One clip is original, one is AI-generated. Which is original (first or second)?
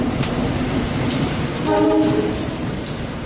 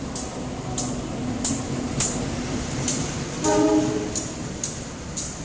second